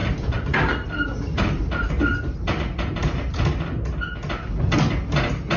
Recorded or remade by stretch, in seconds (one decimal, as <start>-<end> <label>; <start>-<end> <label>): 0.0-1.9 remade; 1.9-5.6 recorded